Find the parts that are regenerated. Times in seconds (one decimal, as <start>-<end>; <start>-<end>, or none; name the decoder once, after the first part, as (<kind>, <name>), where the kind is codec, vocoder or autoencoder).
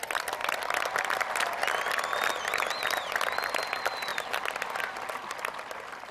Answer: 4.1-4.6 (vocoder, BigVGAN v2)